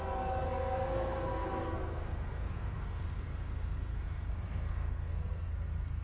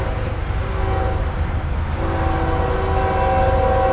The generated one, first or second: first